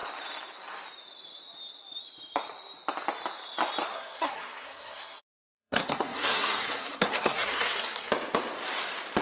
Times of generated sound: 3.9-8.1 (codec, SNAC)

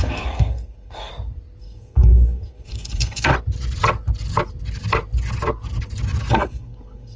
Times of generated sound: 0.0-1.1 (codec, SNAC); 1.6-3.3; 6.3-7.2

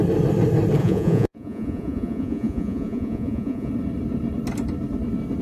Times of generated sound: 0.8-3.7 (vocoder, Vocos)

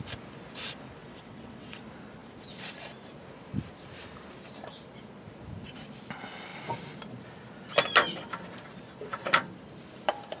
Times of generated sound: 1.0-1.8 (vocoder, WaveNeXt)